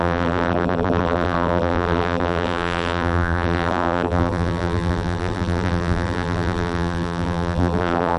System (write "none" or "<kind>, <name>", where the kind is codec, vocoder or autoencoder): vocoder, BigVGAN v2